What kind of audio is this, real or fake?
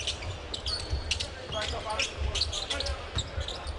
real